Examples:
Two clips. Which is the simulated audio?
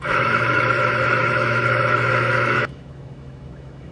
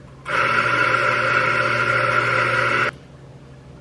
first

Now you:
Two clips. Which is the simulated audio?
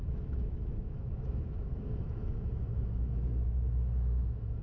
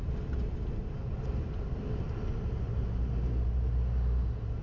first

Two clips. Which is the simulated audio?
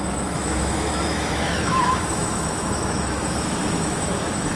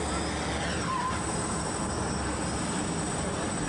first